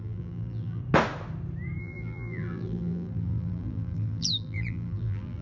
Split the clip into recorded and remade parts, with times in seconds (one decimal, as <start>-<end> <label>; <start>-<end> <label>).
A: 0.0-0.8 remade; 0.8-1.8 recorded; 1.8-5.4 remade